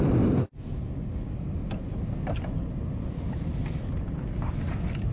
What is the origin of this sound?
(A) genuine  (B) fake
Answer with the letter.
A